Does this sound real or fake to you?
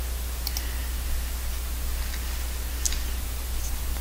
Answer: real